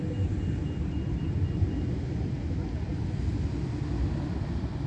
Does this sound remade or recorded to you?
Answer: recorded